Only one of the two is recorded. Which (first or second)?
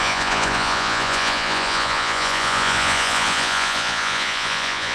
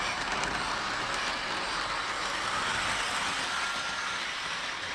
second